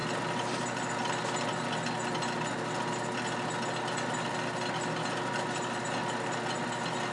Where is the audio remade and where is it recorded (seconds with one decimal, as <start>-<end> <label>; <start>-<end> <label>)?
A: 0.0-7.1 recorded